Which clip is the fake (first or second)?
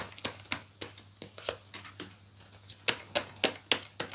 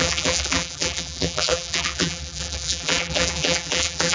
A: second